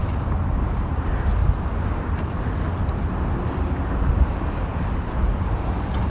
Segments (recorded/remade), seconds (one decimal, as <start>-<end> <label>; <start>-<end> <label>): 0.0-1.3 remade; 1.3-5.0 recorded; 5.0-6.1 remade